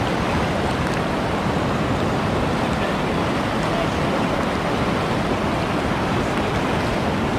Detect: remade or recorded recorded